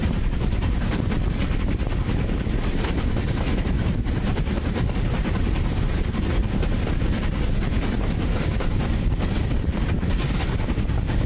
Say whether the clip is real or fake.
fake